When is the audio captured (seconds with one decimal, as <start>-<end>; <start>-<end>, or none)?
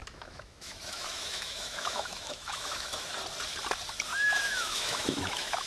3.1-4.1